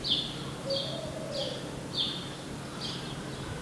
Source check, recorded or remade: recorded